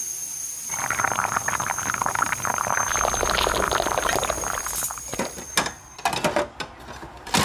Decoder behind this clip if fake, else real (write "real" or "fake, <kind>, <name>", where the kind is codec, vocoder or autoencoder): real